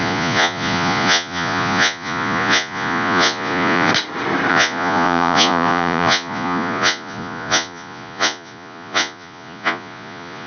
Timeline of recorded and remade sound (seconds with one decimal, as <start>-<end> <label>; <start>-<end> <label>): 0.0-3.9 remade; 3.9-4.5 recorded; 4.5-10.5 remade